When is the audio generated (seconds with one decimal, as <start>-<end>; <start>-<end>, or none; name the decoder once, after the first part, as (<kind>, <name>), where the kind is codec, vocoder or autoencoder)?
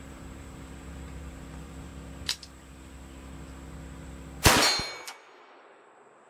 0.0-1.9 (vocoder, BigVGAN v2); 5.6-6.3